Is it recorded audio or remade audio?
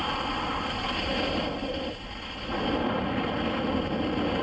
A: recorded